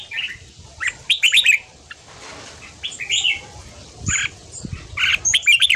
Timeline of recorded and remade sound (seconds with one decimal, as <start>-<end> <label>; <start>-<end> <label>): 0.0-5.8 recorded